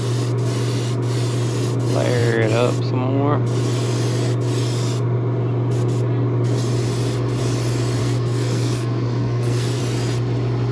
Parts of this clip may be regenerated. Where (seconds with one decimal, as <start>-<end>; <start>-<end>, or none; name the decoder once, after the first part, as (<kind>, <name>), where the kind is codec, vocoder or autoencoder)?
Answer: 8.0-9.8 (codec, SNAC)